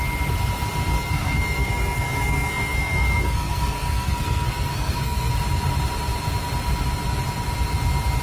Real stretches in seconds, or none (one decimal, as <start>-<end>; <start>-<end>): 0.0-0.9; 5.3-8.2